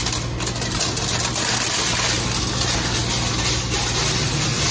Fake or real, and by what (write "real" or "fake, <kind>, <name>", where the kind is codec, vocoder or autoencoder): real